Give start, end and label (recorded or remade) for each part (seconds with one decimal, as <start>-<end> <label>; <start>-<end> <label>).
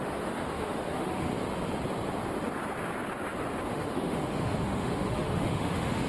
0.0-1.3 remade; 1.3-3.7 recorded; 3.7-6.1 remade